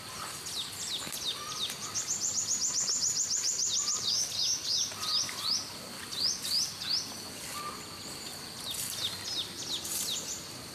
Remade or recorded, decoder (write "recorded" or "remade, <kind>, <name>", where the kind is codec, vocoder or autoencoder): recorded